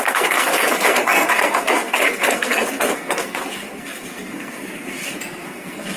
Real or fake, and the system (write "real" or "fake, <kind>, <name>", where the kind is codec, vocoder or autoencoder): fake, codec, SNAC